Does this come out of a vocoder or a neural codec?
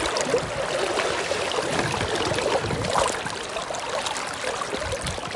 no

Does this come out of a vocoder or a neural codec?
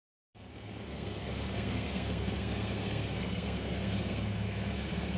yes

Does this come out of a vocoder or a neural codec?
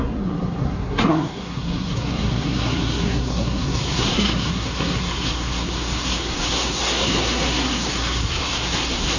yes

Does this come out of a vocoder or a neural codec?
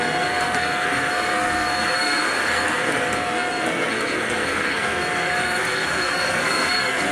yes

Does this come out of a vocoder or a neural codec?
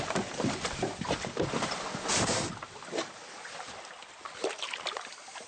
no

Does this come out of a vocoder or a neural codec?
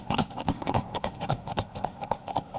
yes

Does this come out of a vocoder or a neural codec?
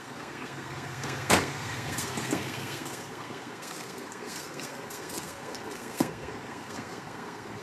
yes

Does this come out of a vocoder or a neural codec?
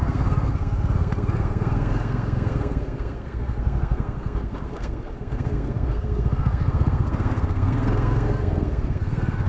yes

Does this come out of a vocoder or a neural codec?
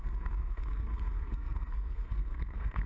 yes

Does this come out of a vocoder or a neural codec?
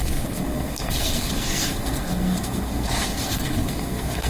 yes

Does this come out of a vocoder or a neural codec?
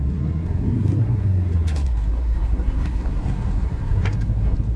yes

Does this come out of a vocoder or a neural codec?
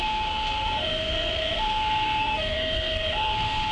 yes